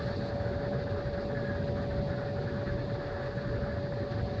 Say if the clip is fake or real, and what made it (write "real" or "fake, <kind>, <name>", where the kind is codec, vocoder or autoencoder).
real